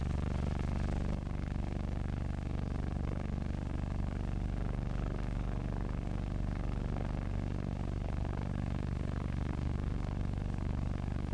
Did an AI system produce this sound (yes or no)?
yes